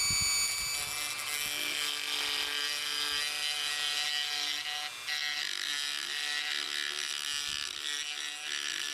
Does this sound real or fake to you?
real